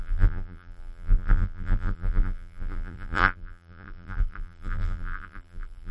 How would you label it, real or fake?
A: fake